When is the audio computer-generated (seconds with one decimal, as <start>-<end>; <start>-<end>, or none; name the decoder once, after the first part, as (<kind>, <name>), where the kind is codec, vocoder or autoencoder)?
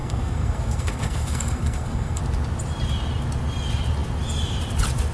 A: 0.0-2.2 (codec, SNAC)